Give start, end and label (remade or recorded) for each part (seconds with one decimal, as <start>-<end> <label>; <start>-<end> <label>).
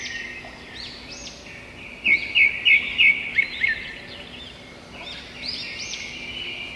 0.0-6.8 recorded